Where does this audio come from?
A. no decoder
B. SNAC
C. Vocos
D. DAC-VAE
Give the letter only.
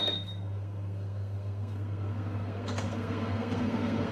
B